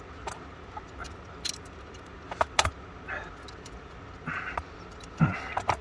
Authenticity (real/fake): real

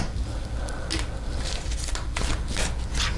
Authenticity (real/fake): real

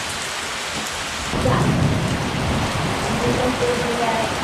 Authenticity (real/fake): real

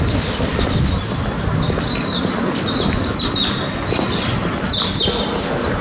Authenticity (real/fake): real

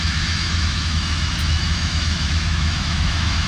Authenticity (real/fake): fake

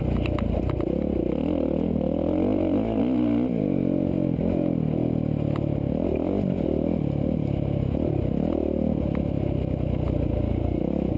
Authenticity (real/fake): real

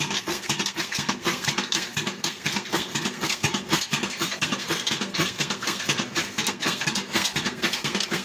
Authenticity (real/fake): fake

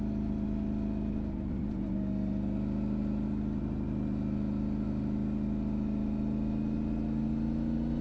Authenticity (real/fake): real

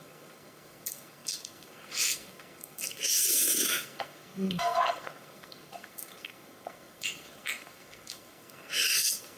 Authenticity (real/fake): fake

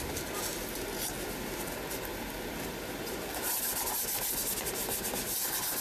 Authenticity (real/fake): real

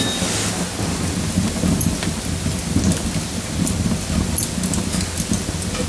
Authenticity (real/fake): real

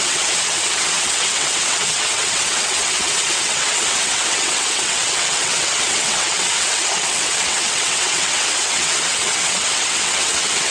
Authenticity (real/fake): fake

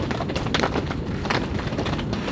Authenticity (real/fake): real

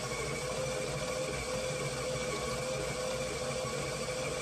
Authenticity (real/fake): real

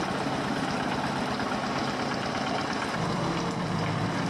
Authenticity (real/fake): real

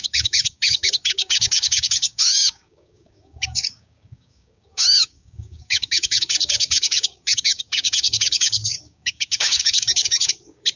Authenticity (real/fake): fake